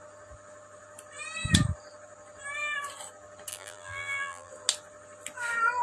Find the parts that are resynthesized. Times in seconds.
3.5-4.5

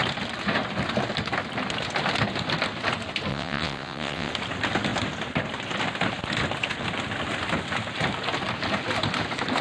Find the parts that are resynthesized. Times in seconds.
3.3-4.3

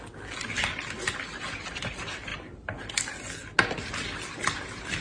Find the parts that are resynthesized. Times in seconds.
none

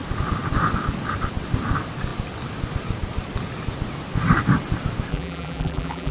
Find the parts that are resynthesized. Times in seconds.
5.1-6.1

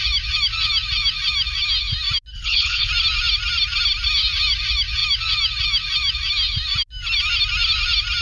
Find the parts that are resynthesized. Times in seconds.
2.3-2.9

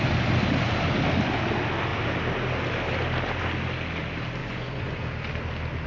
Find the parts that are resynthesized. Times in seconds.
4.4-5.0